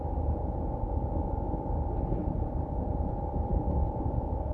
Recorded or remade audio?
recorded